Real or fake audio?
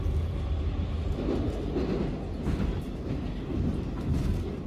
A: real